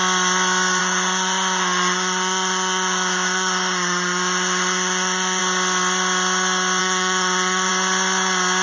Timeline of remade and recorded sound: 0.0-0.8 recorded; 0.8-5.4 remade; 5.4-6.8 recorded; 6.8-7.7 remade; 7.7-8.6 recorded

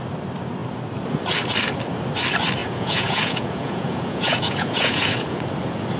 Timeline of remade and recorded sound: 0.0-2.6 recorded; 2.6-5.4 remade; 5.4-6.0 recorded

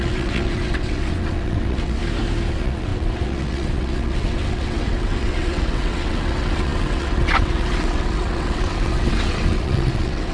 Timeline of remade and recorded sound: 0.0-2.0 remade; 2.0-2.5 recorded; 2.5-10.3 remade

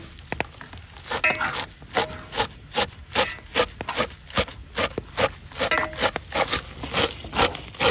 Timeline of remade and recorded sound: 0.0-7.9 recorded